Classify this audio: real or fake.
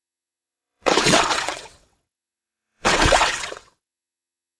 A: fake